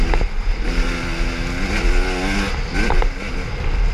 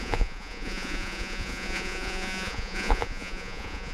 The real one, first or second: first